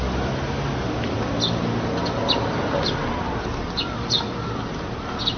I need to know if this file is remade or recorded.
recorded